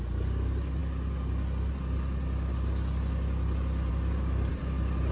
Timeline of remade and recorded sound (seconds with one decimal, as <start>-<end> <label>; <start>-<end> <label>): 0.0-5.1 recorded